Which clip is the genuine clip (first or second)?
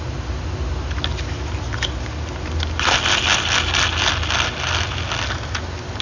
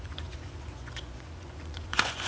first